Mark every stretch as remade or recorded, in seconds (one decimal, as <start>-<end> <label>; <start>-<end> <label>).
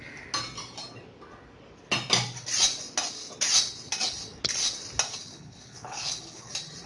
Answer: 0.0-5.2 recorded; 5.2-6.5 remade; 6.5-6.9 recorded